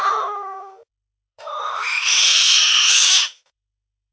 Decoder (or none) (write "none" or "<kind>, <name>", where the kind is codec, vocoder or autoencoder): autoencoder, DAC-VAE